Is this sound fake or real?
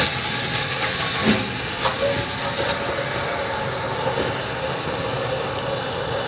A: real